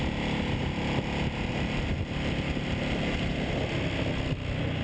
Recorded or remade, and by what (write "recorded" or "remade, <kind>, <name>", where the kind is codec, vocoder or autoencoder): recorded